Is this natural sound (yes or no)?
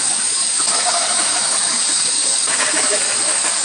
no